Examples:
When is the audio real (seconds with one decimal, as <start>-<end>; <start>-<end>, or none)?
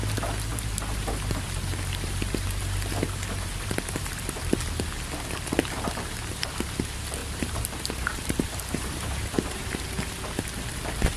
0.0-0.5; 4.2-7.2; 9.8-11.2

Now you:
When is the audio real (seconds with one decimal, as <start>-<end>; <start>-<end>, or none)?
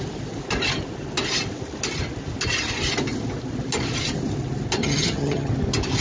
0.0-4.8; 5.5-6.0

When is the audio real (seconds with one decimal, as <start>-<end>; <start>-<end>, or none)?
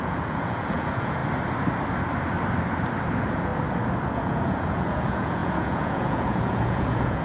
1.2-3.1; 3.5-4.1